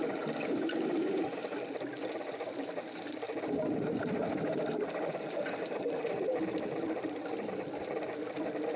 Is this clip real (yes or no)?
yes